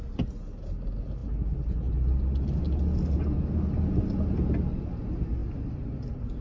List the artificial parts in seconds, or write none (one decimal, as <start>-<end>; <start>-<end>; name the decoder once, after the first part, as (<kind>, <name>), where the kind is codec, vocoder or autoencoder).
none

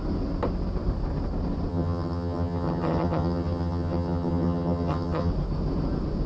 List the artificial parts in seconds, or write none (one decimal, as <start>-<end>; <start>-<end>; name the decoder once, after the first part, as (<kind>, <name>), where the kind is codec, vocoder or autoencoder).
1.7-5.3 (vocoder, HiFi-GAN)

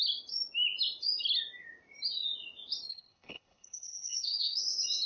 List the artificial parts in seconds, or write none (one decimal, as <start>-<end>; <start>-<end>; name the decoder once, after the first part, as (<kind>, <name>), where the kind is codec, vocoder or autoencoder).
2.9-4.6 (codec, HILCodec)

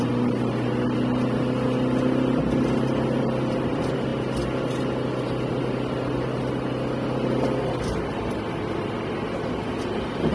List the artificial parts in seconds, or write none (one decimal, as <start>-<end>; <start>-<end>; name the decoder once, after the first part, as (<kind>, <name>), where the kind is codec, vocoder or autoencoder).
none

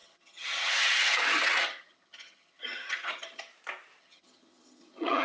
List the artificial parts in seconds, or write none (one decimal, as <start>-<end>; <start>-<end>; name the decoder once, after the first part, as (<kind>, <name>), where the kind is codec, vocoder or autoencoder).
0.0-3.5 (vocoder, HiFi-GAN); 4.0-5.2

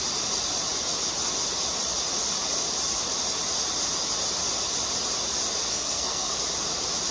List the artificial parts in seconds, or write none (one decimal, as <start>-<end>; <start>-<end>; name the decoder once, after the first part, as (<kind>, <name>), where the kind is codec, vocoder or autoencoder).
5.7-6.4 (codec, SNAC)

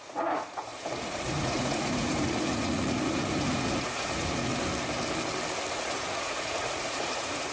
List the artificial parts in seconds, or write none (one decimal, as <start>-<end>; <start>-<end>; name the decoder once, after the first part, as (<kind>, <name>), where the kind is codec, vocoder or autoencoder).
0.0-4.5 (vocoder, Vocos); 5.7-7.5

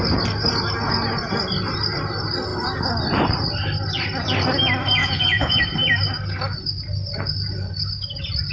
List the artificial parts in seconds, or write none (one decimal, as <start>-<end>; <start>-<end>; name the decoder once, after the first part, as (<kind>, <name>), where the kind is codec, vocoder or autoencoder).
5.0-5.6 (vocoder, Vocos)